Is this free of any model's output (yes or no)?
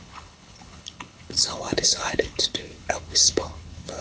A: no